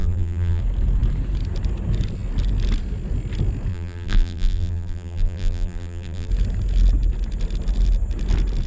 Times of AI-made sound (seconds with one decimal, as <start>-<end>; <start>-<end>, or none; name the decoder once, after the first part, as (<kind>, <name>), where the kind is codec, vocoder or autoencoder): 0.0-0.6 (vocoder, BigVGAN v2); 3.7-6.3